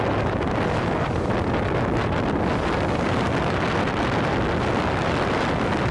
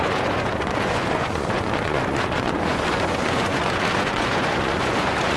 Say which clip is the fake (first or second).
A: second